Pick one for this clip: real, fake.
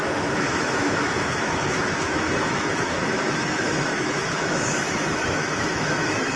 fake